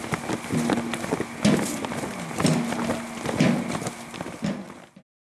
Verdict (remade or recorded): recorded